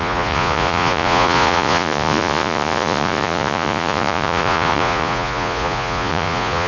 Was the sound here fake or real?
fake